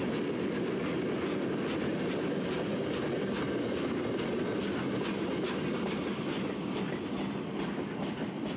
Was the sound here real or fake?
real